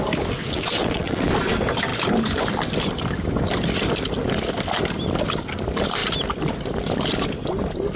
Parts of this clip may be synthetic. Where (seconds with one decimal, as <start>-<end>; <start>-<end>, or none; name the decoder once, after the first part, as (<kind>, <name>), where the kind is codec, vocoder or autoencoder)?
0.4-1.3 (vocoder, WaveNeXt)